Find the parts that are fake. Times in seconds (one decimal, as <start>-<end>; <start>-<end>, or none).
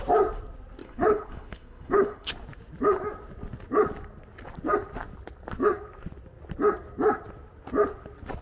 0.8-2.3